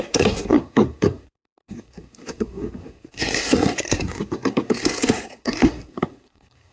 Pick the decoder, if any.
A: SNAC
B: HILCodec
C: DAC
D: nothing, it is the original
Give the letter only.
A